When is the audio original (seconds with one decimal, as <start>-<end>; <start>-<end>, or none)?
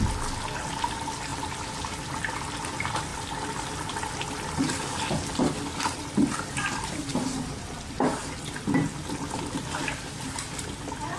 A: 0.0-3.1; 5.0-7.1; 8.1-11.2